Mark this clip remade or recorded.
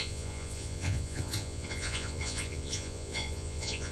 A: remade